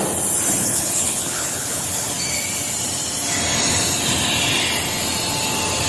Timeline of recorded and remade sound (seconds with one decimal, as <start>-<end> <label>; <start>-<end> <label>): 0.0-0.6 recorded; 0.6-2.1 remade; 2.1-5.9 recorded